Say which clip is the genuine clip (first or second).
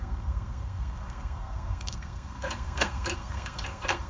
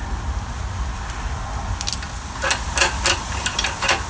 second